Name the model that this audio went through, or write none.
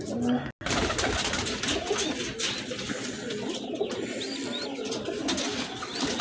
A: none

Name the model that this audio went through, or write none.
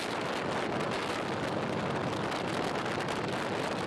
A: none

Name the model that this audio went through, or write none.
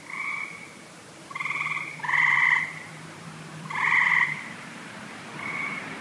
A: vocoder, BigVGAN v2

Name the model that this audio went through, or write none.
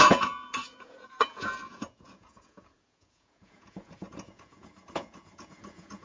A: vocoder, Vocos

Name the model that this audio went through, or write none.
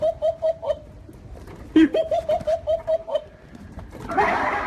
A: none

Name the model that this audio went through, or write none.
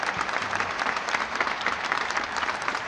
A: vocoder, BigVGAN v2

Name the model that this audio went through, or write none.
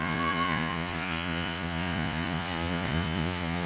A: vocoder, Vocos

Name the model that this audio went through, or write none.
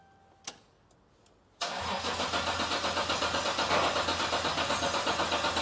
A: none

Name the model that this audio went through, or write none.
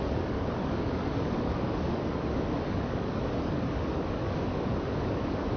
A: codec, DAC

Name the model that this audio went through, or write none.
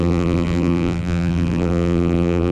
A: vocoder, BigVGAN v2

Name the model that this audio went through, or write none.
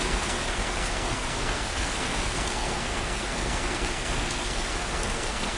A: codec, SNAC